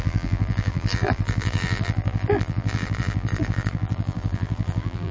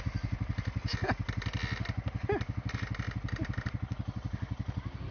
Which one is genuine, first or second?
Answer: second